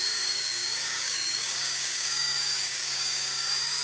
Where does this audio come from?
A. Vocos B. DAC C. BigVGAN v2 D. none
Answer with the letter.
B